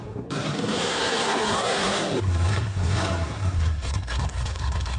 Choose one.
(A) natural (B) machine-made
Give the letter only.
B